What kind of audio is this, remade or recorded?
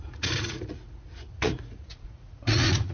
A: remade